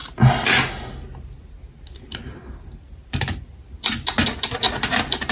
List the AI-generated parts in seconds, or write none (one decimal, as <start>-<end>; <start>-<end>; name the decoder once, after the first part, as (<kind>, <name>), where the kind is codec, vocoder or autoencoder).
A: none